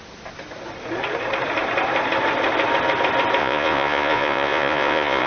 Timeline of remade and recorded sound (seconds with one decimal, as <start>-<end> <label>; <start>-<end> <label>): 0.0-3.4 recorded; 3.4-5.3 remade